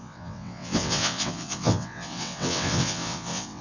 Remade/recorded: remade